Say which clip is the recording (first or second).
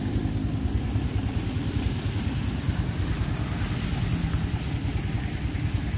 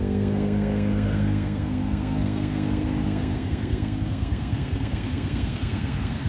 first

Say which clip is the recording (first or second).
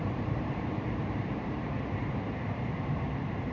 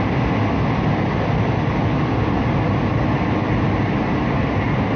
second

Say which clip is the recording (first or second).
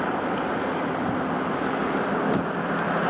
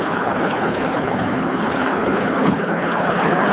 first